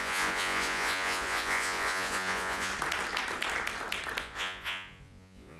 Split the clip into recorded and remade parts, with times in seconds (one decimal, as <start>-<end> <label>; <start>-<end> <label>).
0.0-2.7 remade; 2.7-4.2 recorded; 4.2-5.6 remade